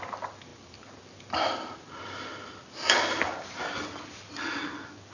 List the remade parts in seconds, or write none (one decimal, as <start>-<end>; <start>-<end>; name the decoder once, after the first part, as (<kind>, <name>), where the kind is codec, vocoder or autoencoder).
none